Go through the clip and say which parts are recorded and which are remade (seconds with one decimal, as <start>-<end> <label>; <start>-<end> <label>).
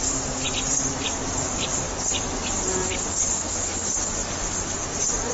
0.0-5.3 recorded